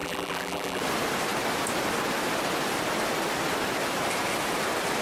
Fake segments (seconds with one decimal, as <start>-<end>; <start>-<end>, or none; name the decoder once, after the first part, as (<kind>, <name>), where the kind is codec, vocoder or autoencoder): 0.0-0.8 (vocoder, BigVGAN v2)